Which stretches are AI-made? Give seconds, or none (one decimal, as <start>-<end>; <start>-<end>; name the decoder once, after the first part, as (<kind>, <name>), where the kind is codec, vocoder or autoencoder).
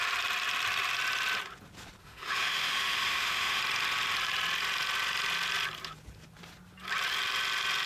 2.0-3.6 (autoencoder, DAC-VAE)